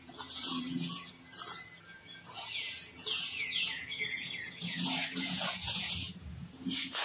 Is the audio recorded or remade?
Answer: remade